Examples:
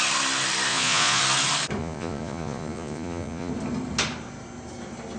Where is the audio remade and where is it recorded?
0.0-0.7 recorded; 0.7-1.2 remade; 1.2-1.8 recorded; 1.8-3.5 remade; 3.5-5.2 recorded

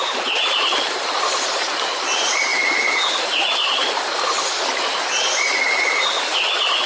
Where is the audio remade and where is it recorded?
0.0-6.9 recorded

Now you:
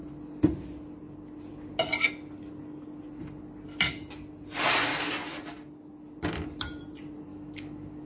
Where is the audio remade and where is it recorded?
0.0-7.3 recorded; 7.3-8.1 remade

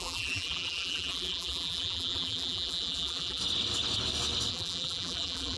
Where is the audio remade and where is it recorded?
0.0-3.4 remade; 3.4-4.5 recorded; 4.5-5.6 remade

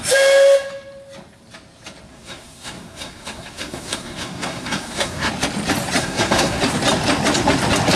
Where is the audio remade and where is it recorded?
0.0-2.1 recorded; 2.1-5.3 remade; 5.3-6.0 recorded; 6.0-6.6 remade; 6.6-8.0 recorded

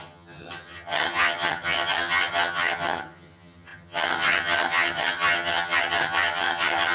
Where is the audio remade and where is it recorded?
0.0-6.9 remade